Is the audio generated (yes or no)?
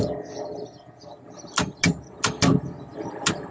no